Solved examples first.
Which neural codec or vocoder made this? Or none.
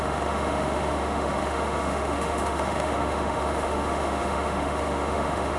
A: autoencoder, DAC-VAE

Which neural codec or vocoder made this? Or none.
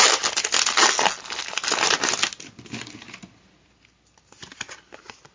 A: none